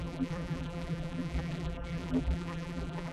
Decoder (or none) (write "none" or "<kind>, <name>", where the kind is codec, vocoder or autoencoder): vocoder, BigVGAN v2